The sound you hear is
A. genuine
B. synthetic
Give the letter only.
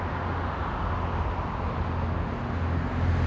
A